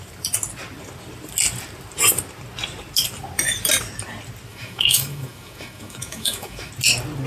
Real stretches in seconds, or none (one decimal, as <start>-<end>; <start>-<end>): 0.0-4.5; 6.7-7.3